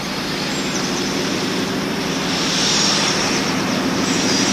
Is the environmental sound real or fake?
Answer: fake